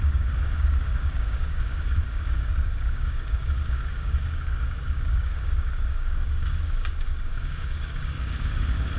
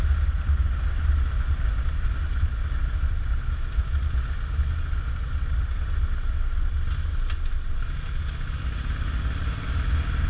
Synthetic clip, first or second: first